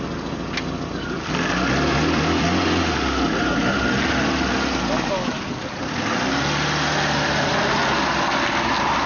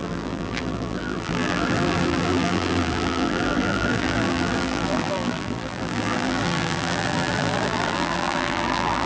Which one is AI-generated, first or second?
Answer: second